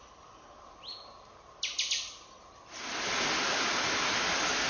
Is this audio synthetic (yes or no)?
no